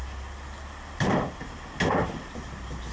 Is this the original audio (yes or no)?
yes